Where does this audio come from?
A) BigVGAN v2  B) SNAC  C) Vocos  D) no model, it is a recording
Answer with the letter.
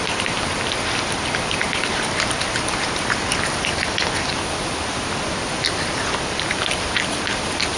A